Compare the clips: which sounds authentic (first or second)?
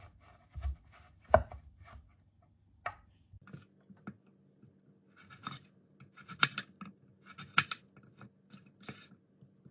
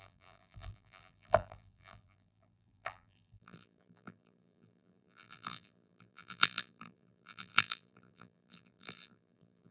first